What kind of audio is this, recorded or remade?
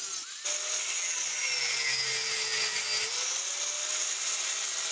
recorded